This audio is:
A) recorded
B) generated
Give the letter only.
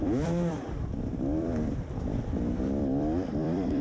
B